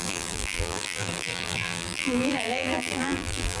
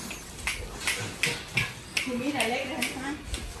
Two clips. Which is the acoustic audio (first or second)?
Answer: second